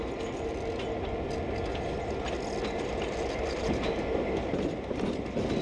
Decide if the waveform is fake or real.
real